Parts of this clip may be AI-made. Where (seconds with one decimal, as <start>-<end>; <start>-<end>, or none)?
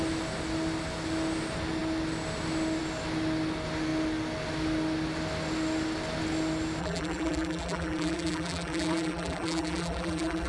6.8-10.5